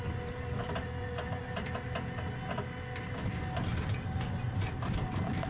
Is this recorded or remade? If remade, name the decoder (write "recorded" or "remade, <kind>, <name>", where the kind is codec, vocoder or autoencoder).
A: recorded